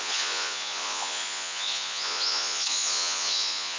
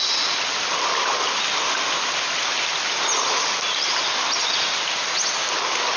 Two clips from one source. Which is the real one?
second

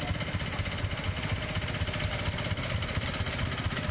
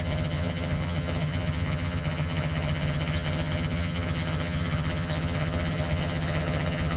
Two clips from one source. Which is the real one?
first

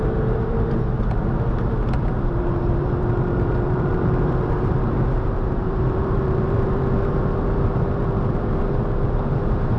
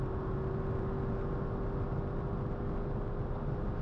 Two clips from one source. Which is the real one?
second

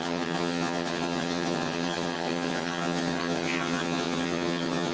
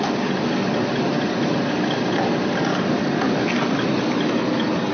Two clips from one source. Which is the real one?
second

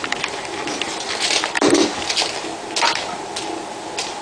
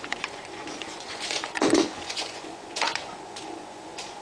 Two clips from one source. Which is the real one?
first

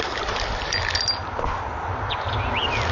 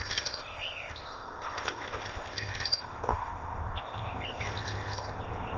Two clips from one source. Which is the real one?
first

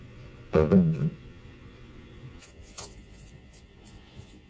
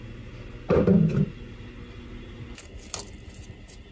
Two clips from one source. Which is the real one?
second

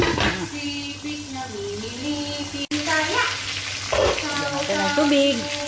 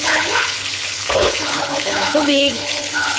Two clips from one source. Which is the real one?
first